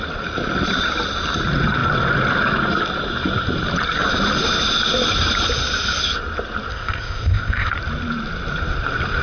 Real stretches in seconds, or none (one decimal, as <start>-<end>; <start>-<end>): 0.0-6.7; 7.7-9.2